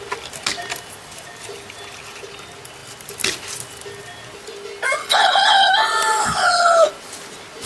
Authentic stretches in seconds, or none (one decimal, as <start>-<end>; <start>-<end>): 0.0-5.0; 5.7-6.2; 6.9-7.7